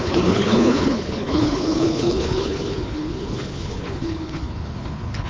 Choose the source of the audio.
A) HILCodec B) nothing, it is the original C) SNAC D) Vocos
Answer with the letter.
A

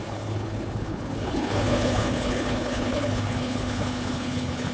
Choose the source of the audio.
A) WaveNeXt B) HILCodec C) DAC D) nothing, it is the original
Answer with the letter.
B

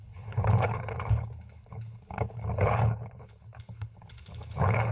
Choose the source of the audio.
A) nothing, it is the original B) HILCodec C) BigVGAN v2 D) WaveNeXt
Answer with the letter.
B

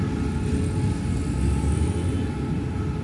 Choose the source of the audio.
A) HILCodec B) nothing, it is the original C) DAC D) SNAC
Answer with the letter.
B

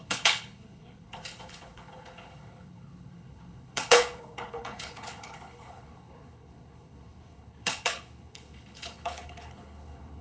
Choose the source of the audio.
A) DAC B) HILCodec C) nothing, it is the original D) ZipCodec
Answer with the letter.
B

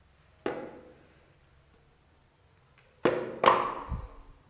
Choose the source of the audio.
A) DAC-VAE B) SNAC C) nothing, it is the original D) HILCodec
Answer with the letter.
C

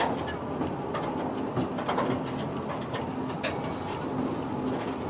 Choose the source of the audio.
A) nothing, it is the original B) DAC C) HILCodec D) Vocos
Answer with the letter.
A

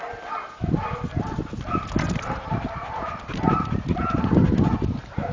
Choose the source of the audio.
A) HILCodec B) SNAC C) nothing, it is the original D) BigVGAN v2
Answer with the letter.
C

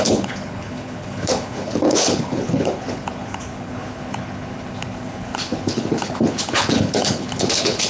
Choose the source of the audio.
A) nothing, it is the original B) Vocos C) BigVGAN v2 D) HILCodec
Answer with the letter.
D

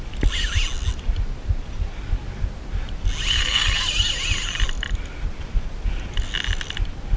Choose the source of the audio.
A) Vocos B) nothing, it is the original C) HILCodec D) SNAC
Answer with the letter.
B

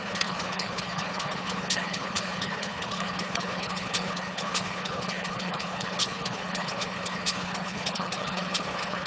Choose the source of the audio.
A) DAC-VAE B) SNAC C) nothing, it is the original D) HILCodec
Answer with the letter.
D